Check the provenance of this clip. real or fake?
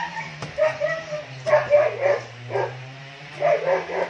fake